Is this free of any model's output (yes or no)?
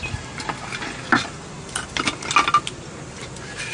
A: yes